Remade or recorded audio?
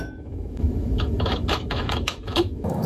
remade